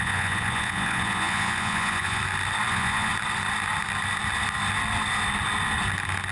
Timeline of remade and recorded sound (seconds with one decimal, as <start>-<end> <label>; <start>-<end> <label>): 0.0-2.2 remade; 2.2-2.7 recorded; 2.7-3.1 remade; 3.1-6.3 recorded